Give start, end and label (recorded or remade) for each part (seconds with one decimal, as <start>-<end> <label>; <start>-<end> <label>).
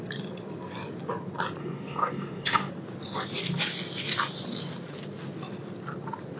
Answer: 0.0-1.6 recorded; 1.6-2.7 remade; 2.7-6.4 recorded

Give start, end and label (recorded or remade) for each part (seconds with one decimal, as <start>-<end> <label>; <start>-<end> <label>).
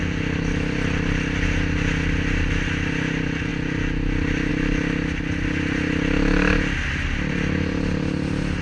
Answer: 0.0-8.6 recorded